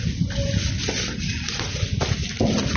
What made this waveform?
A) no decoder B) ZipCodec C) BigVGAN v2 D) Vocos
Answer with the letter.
A